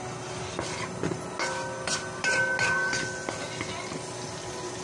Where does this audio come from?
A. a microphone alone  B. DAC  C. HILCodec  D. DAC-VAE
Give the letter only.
A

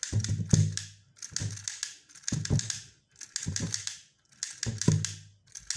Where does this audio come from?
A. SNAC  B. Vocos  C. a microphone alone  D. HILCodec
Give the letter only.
C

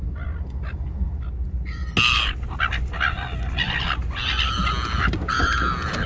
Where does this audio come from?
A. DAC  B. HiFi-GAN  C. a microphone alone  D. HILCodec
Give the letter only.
C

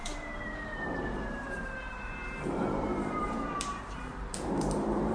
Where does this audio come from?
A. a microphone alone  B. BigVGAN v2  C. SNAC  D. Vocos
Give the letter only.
B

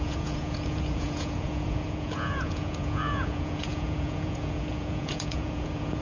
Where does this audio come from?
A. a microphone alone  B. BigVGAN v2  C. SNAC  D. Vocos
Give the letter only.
D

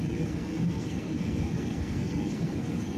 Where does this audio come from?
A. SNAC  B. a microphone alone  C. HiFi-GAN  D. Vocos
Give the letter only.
A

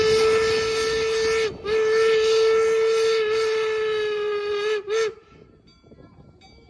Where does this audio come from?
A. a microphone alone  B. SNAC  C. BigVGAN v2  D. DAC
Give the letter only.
A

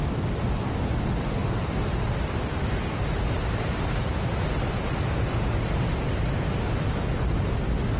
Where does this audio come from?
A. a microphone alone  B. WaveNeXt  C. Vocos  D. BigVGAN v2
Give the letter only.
A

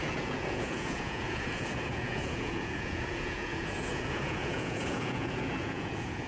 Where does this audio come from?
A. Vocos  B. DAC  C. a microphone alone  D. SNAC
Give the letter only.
A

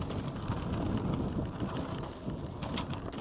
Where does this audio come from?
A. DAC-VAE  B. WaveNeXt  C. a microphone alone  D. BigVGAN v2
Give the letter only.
C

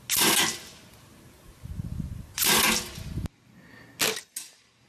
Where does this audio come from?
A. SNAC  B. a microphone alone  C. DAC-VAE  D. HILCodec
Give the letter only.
B